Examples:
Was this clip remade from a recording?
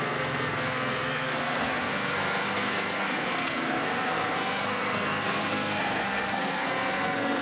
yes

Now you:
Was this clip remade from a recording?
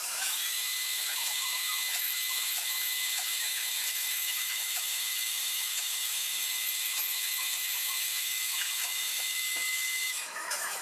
yes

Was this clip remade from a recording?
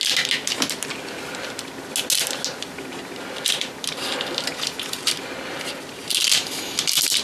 no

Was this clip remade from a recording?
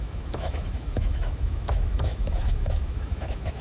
yes